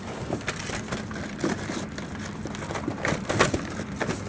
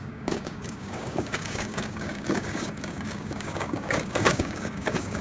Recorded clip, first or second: first